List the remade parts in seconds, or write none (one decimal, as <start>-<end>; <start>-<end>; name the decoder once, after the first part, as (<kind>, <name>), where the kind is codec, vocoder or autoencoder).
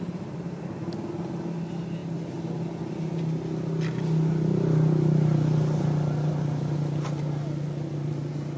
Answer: none